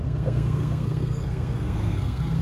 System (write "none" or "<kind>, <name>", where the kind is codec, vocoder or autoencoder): codec, SNAC